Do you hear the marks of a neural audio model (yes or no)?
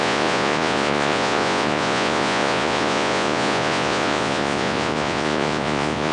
yes